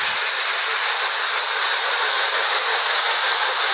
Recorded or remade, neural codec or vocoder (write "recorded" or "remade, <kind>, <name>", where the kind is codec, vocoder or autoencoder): recorded